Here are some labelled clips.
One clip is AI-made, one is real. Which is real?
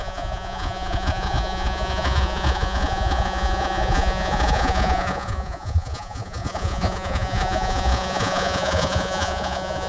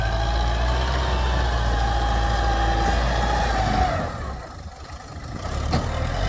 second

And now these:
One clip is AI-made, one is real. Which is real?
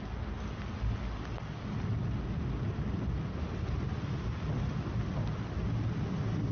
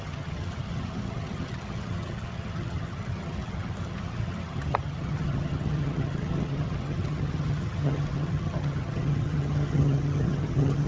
first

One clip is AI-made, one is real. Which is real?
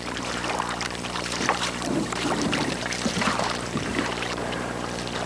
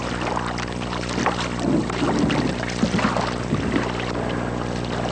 second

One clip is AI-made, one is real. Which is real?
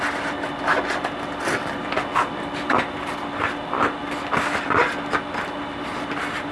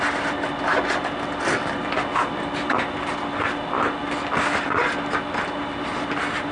second